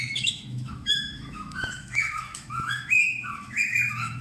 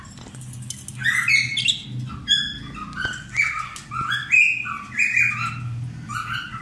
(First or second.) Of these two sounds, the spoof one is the first